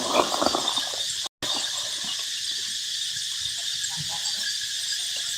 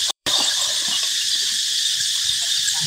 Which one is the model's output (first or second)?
second